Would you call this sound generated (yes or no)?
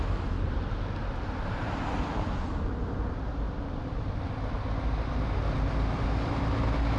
no